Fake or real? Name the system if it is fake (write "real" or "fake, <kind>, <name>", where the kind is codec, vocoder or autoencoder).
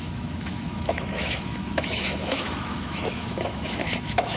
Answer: fake, autoencoder, DAC-VAE